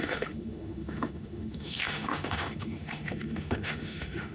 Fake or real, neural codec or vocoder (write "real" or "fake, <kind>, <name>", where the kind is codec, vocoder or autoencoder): fake, autoencoder, DAC-VAE